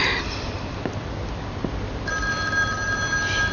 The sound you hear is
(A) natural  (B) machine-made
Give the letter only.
A